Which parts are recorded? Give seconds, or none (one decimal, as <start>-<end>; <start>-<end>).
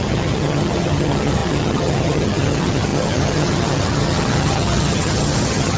none